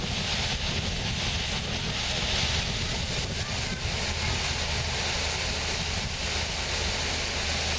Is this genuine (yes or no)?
yes